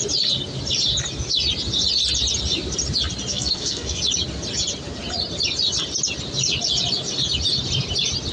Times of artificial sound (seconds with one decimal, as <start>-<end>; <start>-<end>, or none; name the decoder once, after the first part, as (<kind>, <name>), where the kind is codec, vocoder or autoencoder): 3.3-4.0 (codec, SNAC)